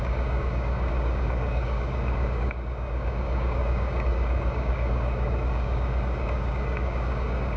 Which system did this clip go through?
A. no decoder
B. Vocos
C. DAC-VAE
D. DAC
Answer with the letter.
D